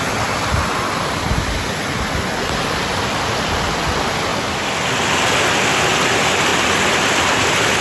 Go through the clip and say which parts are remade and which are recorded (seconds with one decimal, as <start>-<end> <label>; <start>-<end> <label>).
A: 0.0-6.5 recorded; 6.5-7.8 remade